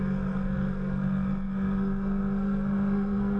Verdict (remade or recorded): remade